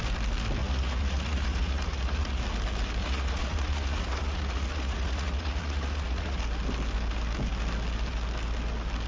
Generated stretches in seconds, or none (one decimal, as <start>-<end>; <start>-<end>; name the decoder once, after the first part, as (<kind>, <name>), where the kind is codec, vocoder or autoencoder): 0.6-2.4 (vocoder, Vocos); 3.0-6.4